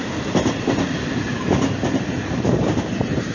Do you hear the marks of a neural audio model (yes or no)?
yes